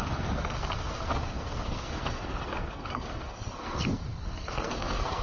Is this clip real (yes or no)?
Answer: no